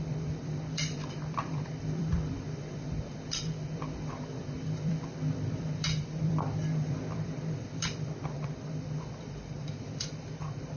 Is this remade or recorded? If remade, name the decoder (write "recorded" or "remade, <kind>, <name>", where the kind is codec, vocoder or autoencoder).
remade, vocoder, BigVGAN v2